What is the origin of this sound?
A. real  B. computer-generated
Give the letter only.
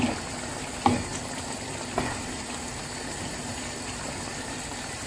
A